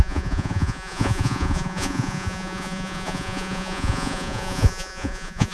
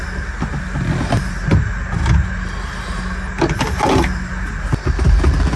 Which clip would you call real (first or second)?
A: second